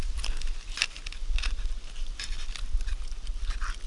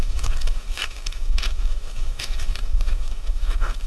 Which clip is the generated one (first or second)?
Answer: second